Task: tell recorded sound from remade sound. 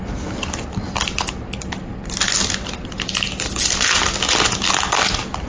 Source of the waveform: recorded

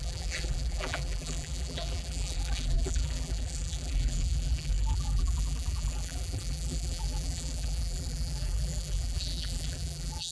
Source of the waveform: remade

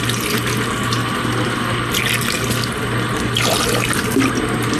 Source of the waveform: recorded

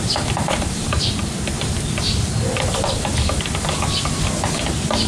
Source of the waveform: recorded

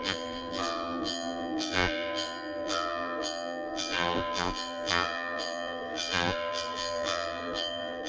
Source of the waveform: remade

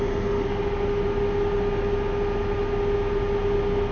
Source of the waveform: recorded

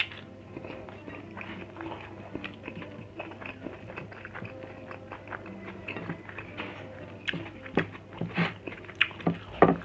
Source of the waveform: recorded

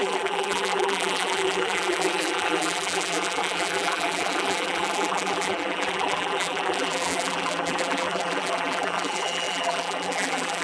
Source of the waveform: remade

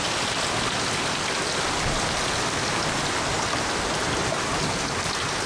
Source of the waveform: recorded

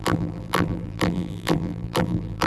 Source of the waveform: remade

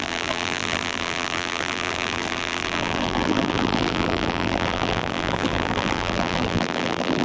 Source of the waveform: remade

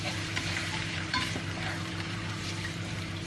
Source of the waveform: remade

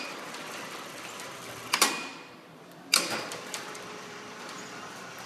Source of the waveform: remade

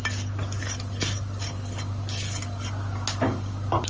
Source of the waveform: recorded